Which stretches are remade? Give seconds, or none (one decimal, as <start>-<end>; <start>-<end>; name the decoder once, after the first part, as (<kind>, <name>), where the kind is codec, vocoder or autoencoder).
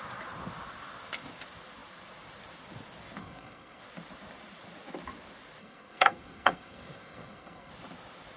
3.2-3.8 (codec, SNAC); 5.6-7.7